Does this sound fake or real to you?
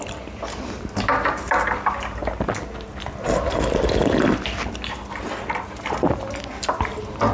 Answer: real